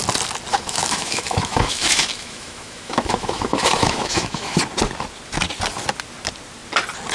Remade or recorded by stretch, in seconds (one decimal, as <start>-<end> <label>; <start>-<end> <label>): 0.0-0.5 recorded; 0.5-4.6 remade; 4.6-7.1 recorded